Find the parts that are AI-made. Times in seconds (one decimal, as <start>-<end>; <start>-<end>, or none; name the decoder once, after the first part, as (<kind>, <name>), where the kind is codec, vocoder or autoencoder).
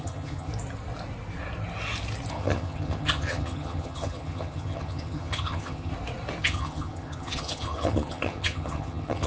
0.0-0.5 (vocoder, HiFi-GAN); 2.3-5.9; 6.4-9.3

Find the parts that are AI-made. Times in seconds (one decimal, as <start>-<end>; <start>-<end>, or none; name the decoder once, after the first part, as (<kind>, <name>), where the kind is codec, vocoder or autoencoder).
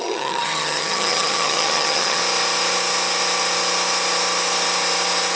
0.0-2.2 (vocoder, HiFi-GAN)